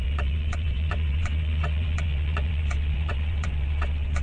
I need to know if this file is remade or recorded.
remade